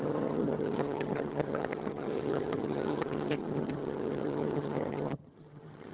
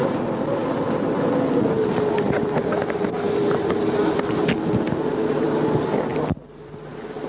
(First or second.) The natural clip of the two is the second